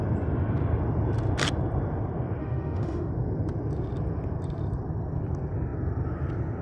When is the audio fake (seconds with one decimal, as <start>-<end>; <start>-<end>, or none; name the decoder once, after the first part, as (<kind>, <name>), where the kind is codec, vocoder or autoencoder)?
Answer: 2.4-3.1 (autoencoder, DAC-VAE)